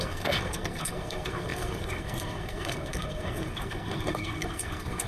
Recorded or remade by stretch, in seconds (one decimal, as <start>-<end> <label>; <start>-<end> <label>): 0.0-5.1 remade